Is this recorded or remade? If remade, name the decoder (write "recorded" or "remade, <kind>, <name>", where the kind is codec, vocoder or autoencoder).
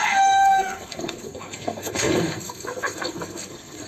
remade, codec, SNAC